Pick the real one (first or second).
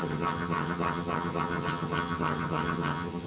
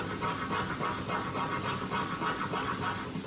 second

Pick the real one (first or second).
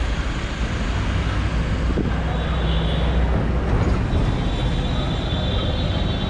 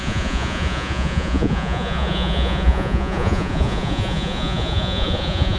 first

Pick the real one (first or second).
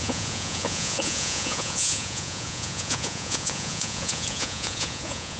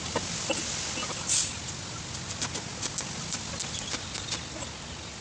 second